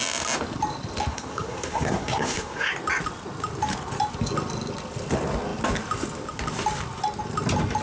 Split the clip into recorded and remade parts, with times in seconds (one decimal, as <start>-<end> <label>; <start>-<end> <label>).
0.0-1.1 recorded; 1.1-2.7 remade; 2.7-7.8 recorded